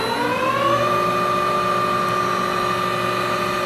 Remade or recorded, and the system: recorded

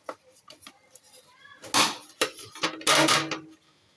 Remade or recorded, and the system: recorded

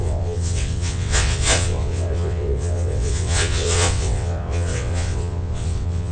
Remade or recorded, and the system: remade, vocoder, WaveNeXt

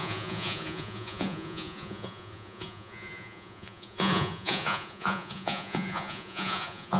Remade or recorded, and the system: remade, vocoder, Vocos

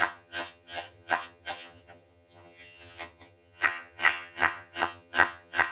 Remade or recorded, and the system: remade, vocoder, HiFi-GAN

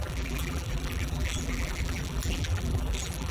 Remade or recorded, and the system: remade, vocoder, BigVGAN v2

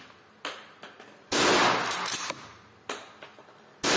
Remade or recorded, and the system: recorded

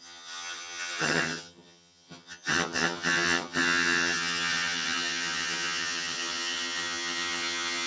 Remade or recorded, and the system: remade, vocoder, HiFi-GAN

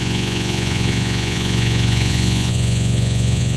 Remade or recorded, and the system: remade, vocoder, Vocos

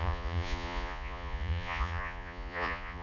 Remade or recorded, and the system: remade, vocoder, Vocos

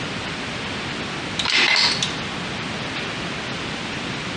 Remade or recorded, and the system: recorded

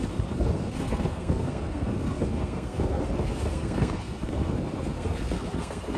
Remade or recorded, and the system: remade, codec, SNAC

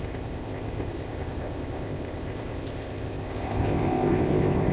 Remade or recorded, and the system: remade, codec, ZipCodec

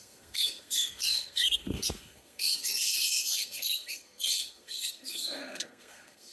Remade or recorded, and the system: remade, codec, SNAC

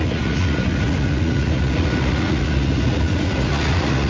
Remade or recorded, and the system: remade, vocoder, Vocos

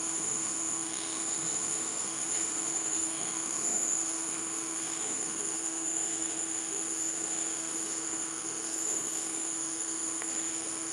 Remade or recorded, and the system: remade, autoencoder, DAC-VAE